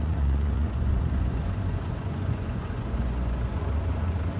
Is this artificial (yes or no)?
yes